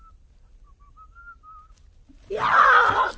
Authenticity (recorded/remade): recorded